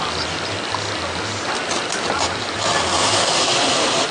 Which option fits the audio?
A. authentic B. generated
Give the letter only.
A